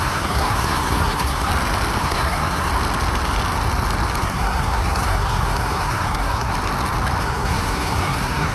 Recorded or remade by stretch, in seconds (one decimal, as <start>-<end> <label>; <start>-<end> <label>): 0.0-1.5 remade; 1.5-2.0 recorded; 2.0-2.7 remade; 2.7-4.2 recorded; 4.2-6.5 remade; 6.5-7.2 recorded; 7.2-8.5 remade